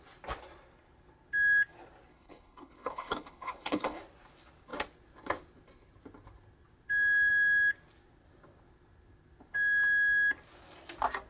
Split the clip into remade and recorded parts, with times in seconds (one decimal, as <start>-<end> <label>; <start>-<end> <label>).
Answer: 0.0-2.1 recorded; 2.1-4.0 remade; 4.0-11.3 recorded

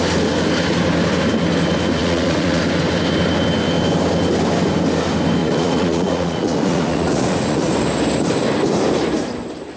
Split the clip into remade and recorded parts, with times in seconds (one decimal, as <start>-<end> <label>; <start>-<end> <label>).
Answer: 0.0-2.0 recorded; 2.0-2.6 remade; 2.6-5.4 recorded; 5.4-7.7 remade; 7.7-9.8 recorded

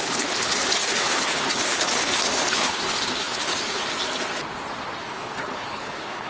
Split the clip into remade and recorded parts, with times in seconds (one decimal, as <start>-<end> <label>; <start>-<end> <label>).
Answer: 0.0-3.8 remade; 3.8-5.0 recorded; 5.0-6.3 remade

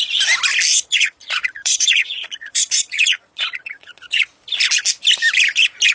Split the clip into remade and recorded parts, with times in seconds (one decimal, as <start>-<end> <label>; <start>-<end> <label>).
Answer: 0.0-0.7 recorded; 0.7-4.2 remade; 4.2-5.9 recorded